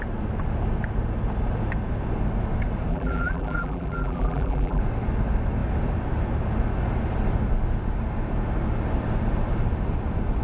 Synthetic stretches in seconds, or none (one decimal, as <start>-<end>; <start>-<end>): 2.9-4.8